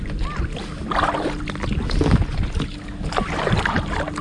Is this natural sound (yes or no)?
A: yes